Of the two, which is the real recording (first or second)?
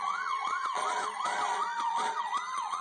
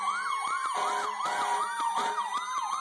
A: second